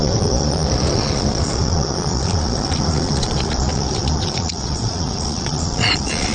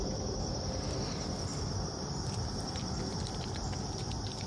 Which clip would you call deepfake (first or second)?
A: first